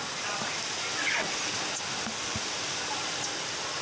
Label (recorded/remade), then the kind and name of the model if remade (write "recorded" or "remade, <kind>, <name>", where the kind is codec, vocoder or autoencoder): recorded